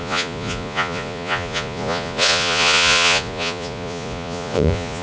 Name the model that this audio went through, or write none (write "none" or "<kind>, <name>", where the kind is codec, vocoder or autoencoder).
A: vocoder, Vocos